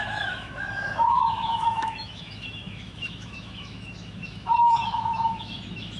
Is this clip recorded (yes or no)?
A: no